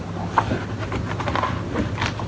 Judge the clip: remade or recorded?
recorded